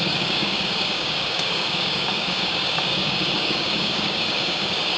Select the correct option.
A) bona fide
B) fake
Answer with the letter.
B